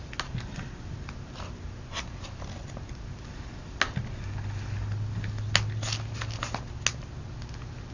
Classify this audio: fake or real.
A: real